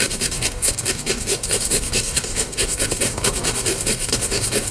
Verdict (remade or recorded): remade